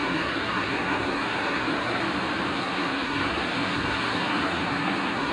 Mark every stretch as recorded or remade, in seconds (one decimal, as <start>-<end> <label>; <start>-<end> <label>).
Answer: 0.0-2.0 remade; 2.0-2.5 recorded; 2.5-5.3 remade